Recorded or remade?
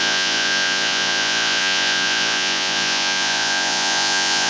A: remade